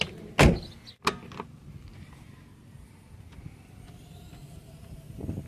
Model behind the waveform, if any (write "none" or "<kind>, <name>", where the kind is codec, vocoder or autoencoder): none